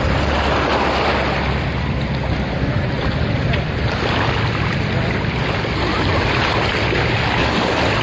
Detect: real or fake real